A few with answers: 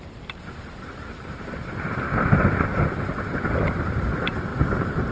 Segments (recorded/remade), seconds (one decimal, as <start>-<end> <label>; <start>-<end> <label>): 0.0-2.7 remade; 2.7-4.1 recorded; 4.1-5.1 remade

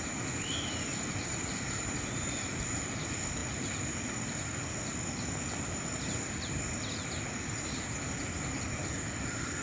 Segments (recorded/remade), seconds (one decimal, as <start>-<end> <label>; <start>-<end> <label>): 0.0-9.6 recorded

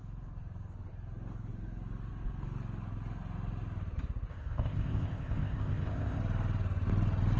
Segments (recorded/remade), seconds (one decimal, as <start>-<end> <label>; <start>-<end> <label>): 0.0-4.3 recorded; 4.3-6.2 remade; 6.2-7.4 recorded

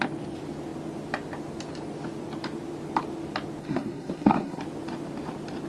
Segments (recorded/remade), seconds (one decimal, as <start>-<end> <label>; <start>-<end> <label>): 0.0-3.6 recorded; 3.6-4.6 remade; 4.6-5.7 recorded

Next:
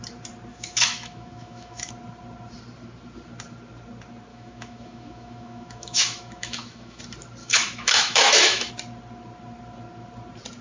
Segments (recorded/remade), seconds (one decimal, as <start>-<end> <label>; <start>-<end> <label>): 0.0-0.5 recorded; 0.5-1.9 remade; 1.9-4.3 recorded; 4.3-7.0 remade; 7.0-7.4 recorded; 7.4-8.7 remade; 8.7-10.6 recorded